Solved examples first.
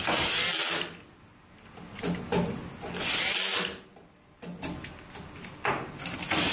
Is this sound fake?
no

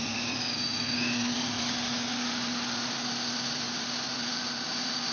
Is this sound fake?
no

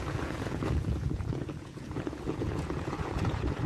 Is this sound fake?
yes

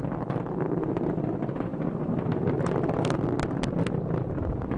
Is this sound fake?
no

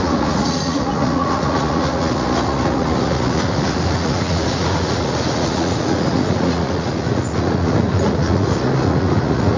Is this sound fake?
yes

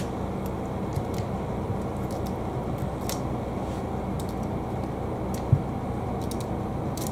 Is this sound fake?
no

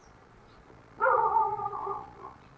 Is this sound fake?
yes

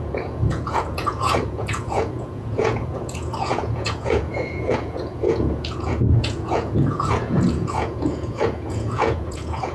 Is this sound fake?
yes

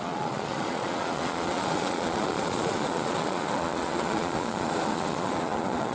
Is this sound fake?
yes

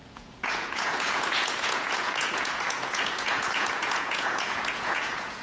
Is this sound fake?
yes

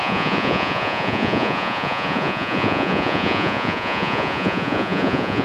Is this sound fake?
yes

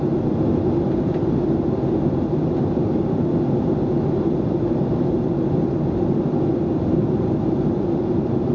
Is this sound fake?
no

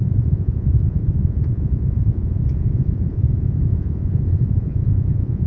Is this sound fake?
yes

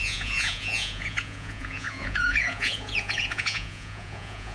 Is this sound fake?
yes